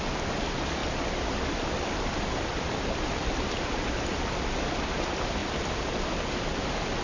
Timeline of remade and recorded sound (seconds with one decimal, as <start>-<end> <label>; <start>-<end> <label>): 0.0-0.8 recorded; 0.8-3.8 remade; 3.8-5.4 recorded; 5.4-6.0 remade; 6.0-7.0 recorded